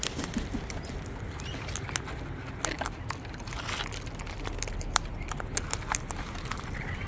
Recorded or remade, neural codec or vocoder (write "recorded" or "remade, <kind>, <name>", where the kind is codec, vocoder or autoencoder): recorded